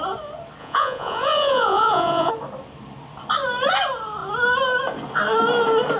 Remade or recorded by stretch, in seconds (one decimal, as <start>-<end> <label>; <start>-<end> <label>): 0.0-0.6 recorded; 0.6-2.3 remade; 2.3-6.0 recorded